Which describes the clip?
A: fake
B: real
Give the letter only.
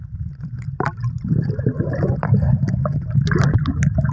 B